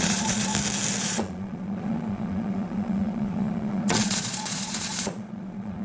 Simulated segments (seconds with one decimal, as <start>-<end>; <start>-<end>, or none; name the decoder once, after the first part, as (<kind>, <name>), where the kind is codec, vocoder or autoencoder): 0.0-0.5 (vocoder, Vocos); 1.0-5.8